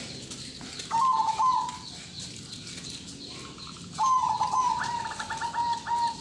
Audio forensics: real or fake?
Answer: real